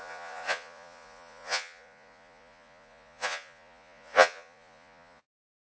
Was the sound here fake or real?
fake